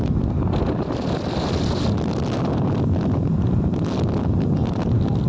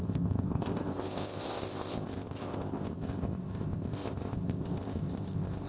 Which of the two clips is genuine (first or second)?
first